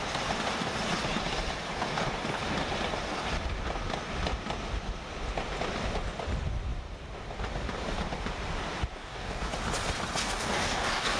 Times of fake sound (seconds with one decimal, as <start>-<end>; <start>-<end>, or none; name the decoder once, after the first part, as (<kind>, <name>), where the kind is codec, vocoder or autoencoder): 9.0-9.5 (codec, DAC); 10.2-11.2